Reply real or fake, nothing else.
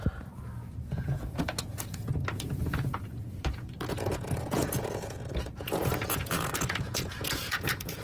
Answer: fake